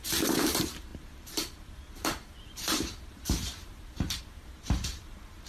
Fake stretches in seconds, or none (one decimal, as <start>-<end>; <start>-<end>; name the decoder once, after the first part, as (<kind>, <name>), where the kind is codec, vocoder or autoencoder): 0.0-5.5 (vocoder, BigVGAN v2)